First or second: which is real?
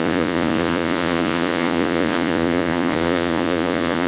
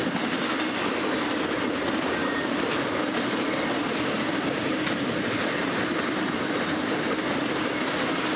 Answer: second